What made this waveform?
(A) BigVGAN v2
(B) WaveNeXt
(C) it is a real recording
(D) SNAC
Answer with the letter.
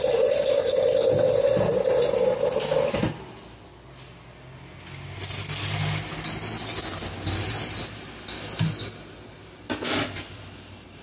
C